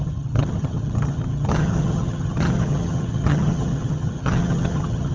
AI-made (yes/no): yes